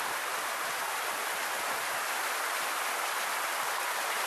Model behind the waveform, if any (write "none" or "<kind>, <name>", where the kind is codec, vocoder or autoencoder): none